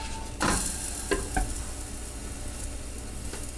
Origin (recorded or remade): recorded